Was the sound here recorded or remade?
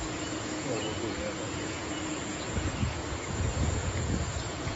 remade